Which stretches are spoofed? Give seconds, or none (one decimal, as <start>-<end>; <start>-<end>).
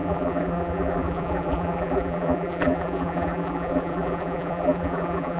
0.0-5.4